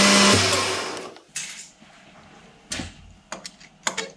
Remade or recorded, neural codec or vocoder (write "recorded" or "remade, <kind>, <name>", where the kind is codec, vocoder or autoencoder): recorded